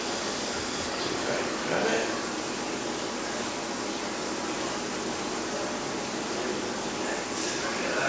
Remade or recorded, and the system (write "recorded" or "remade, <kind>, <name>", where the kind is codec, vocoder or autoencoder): recorded